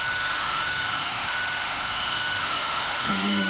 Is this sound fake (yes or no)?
yes